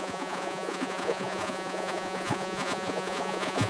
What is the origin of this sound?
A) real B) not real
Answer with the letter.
B